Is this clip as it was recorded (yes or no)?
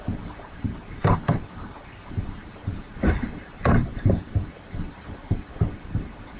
no